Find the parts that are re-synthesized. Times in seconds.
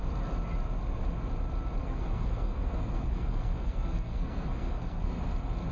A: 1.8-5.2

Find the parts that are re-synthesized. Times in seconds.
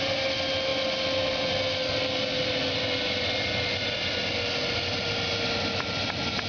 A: none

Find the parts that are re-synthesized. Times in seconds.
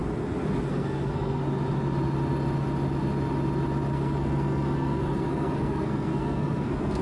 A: 0.7-1.4; 3.9-7.0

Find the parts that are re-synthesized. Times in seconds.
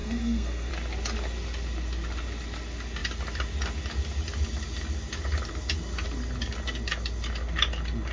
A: 0.0-0.7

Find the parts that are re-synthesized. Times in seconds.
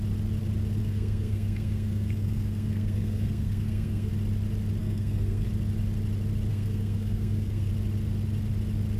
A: 0.8-4.1; 4.8-5.5; 6.5-7.7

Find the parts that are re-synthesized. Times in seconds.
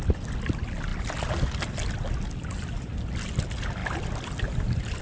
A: none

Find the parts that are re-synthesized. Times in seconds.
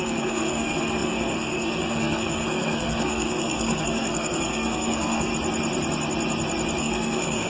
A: 0.0-5.3; 6.8-7.5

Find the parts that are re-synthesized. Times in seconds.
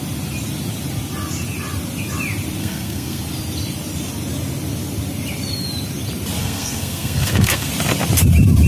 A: 2.6-3.2; 6.4-7.7